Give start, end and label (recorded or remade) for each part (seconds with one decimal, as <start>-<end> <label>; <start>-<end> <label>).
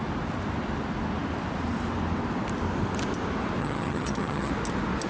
0.0-3.6 recorded; 3.6-4.5 remade; 4.5-5.1 recorded